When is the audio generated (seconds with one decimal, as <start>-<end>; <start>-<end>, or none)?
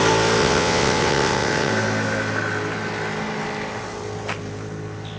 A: 0.4-1.7